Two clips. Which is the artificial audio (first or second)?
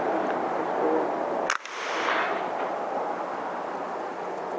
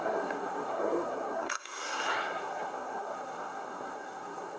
second